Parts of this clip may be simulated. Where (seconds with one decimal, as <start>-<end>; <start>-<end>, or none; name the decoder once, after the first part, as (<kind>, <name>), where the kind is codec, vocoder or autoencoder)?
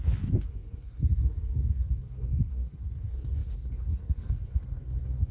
0.0-5.3 (codec, SNAC)